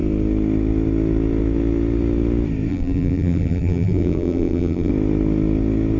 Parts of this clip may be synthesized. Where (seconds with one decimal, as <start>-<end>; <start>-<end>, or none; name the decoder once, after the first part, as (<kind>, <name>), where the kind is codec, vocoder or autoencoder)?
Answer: 2.7-4.9 (vocoder, BigVGAN v2)